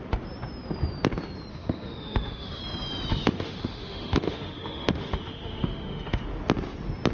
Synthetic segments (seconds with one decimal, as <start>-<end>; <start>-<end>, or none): 1.5-2.6; 3.1-6.2